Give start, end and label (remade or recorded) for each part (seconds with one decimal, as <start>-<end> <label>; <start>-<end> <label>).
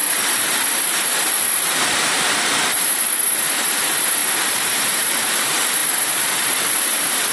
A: 0.0-7.3 remade